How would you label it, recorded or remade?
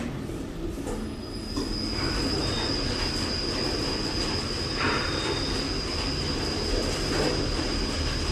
recorded